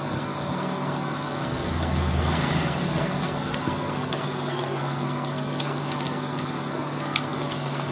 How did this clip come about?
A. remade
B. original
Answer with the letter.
A